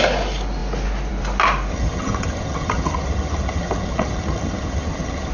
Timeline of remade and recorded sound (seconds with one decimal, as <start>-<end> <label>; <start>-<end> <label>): 0.0-1.7 recorded; 1.7-5.3 remade